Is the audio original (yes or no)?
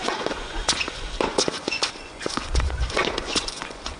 no